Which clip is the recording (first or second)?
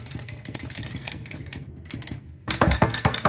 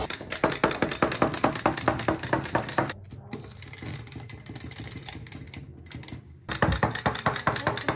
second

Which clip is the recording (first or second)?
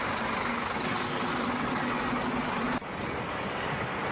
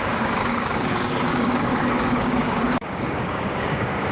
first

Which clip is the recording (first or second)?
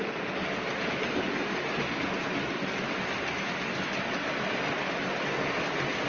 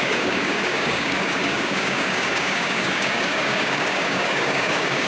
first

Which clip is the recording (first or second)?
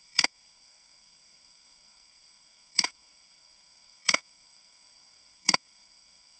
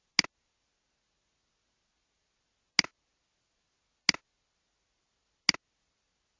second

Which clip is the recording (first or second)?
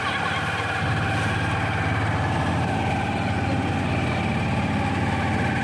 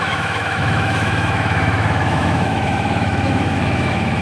first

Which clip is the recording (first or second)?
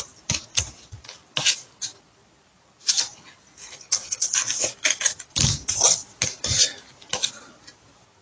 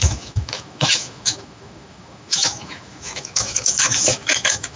first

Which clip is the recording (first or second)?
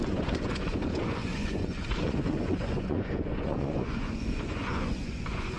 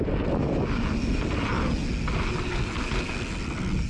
second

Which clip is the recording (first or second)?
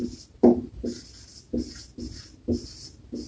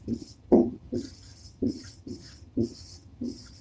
first